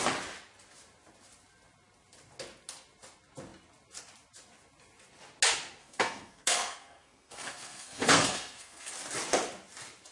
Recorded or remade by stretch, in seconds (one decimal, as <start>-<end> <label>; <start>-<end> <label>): 0.0-5.8 recorded; 5.8-8.9 remade; 8.9-10.1 recorded